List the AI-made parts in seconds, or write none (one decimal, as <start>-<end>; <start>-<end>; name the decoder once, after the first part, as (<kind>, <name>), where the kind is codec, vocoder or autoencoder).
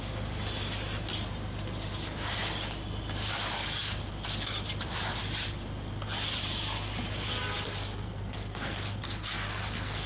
7.8-10.1 (codec, SNAC)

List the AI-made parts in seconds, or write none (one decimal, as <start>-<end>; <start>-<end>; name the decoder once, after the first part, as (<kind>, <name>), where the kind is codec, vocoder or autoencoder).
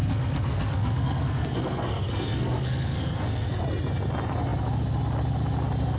0.0-3.6 (codec, SNAC)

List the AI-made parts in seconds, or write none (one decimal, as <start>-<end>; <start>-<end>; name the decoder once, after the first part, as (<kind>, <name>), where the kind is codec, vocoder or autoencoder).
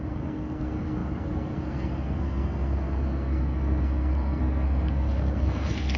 0.0-6.0 (codec, SNAC)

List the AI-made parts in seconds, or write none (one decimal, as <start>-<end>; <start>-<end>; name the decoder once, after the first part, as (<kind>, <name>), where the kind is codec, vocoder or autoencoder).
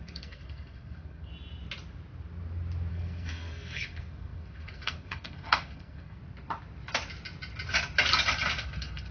0.0-1.3 (codec, SNAC); 2.9-6.2; 8.6-9.1